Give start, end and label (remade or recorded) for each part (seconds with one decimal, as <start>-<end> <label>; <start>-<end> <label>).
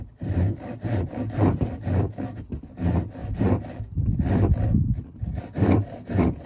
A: 0.0-3.2 recorded; 3.2-6.5 remade